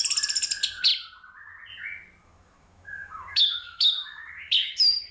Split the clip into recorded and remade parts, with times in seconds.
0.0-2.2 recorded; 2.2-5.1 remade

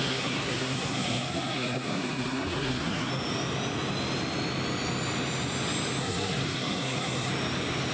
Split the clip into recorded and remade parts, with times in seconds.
0.0-3.1 remade; 3.1-6.0 recorded; 6.0-7.3 remade; 7.3-7.9 recorded

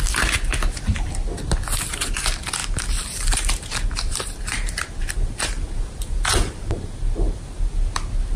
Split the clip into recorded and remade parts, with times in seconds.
0.0-2.6 recorded; 2.6-7.6 remade; 7.6-8.4 recorded